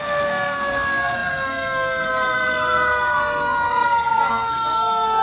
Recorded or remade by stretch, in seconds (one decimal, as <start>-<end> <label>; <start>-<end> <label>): 0.0-5.2 remade